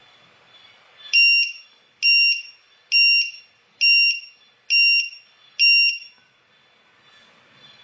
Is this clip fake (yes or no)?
no